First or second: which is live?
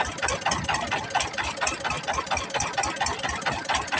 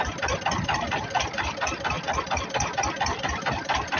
first